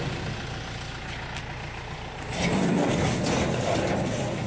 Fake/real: real